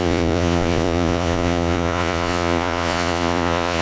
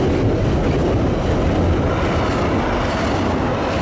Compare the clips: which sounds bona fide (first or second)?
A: second